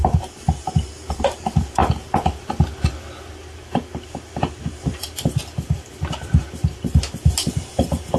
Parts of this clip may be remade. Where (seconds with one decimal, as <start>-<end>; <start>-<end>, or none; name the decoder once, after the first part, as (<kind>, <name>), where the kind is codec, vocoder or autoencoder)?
none